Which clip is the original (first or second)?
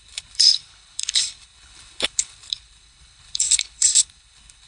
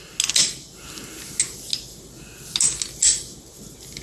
second